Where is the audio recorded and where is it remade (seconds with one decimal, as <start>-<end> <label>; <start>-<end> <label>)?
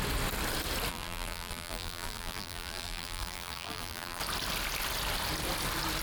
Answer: 0.0-0.9 recorded; 0.9-4.2 remade; 4.2-6.0 recorded